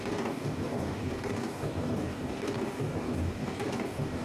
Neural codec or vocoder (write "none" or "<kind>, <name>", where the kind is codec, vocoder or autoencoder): codec, DAC